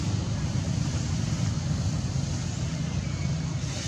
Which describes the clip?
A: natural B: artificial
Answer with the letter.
A